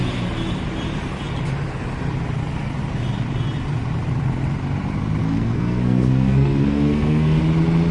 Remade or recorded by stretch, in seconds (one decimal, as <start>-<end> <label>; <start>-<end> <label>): 0.0-5.2 recorded; 5.2-7.4 remade; 7.4-7.9 recorded

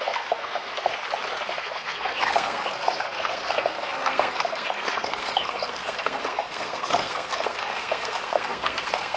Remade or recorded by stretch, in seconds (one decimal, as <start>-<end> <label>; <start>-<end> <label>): 0.0-0.9 remade; 0.9-1.5 recorded; 1.5-9.2 remade

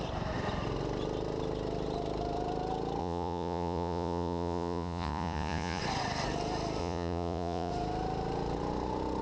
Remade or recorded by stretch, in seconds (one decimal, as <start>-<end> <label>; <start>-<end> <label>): 0.0-3.0 recorded; 3.0-5.8 remade; 5.8-6.8 recorded; 6.8-7.7 remade; 7.7-9.2 recorded